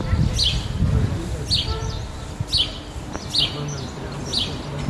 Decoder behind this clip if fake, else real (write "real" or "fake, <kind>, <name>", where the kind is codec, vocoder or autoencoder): real